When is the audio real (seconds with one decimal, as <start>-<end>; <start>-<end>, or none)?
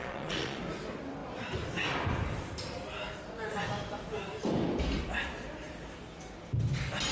0.6-7.1